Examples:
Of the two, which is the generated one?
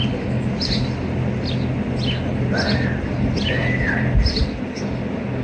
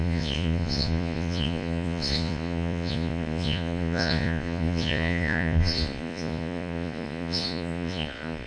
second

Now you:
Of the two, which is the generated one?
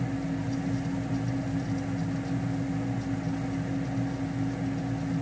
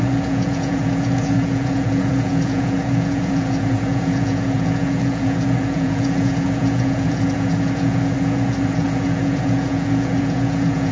second